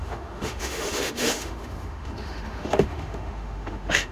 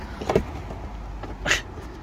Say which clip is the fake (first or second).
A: first